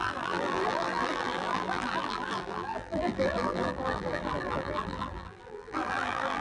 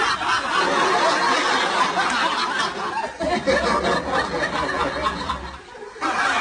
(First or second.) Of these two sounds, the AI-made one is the first